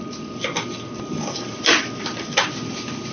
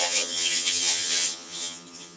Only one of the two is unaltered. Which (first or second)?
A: first